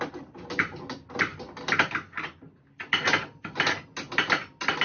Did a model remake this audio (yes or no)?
no